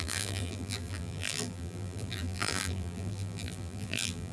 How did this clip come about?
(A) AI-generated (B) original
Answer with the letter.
A